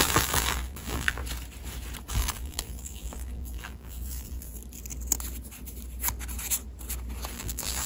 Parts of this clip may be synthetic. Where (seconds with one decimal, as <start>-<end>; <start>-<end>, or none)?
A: 0.0-1.2; 2.1-4.6; 7.3-7.9